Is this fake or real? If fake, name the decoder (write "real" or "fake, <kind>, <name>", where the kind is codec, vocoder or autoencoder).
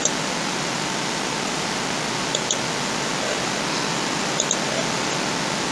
real